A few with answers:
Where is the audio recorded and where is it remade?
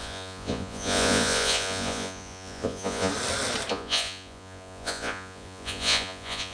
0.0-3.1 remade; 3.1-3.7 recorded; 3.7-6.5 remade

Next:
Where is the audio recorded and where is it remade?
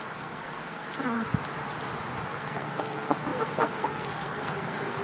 0.0-1.3 remade; 1.3-2.3 recorded; 2.3-5.0 remade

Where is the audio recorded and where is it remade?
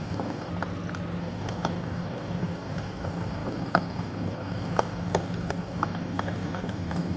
0.0-0.5 remade; 0.5-1.2 recorded; 1.2-7.2 remade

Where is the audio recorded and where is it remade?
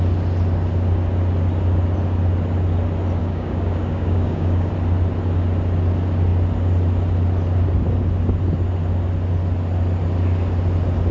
0.0-3.2 recorded; 3.2-4.7 remade; 4.7-11.1 recorded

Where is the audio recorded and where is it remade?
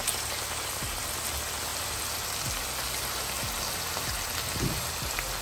0.0-5.4 recorded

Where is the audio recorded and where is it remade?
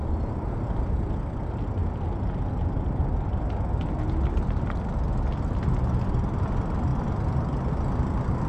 0.0-8.5 recorded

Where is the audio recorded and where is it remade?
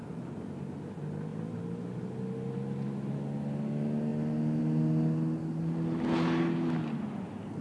0.0-7.6 recorded